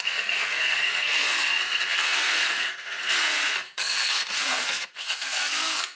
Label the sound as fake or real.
fake